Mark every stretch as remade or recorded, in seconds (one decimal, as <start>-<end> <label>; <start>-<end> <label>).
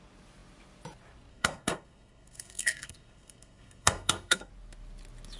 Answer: 0.0-1.3 recorded; 1.3-4.5 remade; 4.5-5.4 recorded